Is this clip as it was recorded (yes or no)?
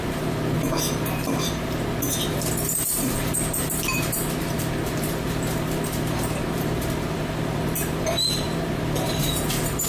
no